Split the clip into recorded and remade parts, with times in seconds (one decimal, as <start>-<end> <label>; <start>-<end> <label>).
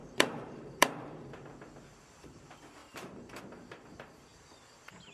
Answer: 0.0-1.3 remade; 1.3-2.8 recorded; 2.8-3.4 remade; 3.4-5.1 recorded